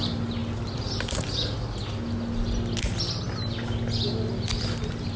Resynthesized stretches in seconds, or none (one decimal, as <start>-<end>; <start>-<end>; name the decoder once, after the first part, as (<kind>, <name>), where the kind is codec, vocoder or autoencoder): none